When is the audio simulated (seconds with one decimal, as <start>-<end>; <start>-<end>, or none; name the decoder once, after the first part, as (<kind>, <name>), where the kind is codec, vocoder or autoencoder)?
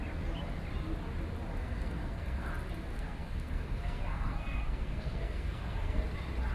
1.5-2.5 (codec, SNAC); 2.9-6.0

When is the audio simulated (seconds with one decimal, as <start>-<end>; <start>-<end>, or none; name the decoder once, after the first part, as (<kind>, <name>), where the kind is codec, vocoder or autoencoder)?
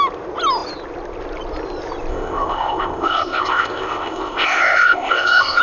2.1-5.6 (codec, ZipCodec)